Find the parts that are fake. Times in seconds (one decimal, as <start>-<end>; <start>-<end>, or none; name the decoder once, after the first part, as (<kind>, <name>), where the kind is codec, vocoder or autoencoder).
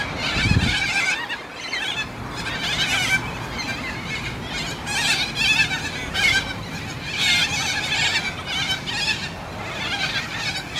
none